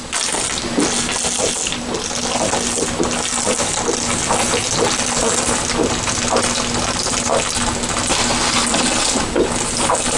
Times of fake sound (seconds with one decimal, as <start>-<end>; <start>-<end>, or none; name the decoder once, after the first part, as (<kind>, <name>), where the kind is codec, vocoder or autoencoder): none